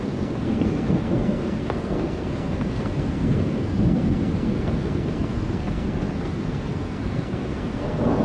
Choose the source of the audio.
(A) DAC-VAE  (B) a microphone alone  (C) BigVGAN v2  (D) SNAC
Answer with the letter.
D